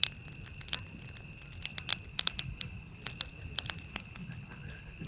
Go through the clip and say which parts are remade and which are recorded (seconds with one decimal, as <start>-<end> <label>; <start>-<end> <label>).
0.0-2.1 recorded; 2.1-3.0 remade; 3.0-3.9 recorded; 3.9-5.1 remade